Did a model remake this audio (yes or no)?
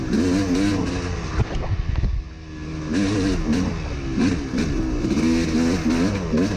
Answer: no